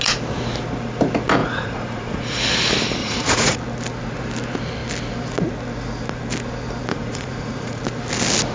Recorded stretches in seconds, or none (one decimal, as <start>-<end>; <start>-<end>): 0.0-1.4; 2.4-3.0; 3.6-6.9; 7.8-8.5